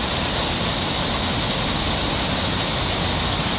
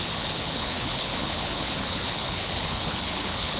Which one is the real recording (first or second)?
first